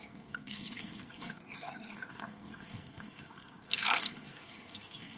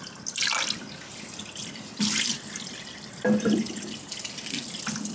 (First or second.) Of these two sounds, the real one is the second